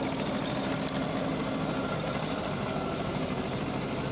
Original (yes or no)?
yes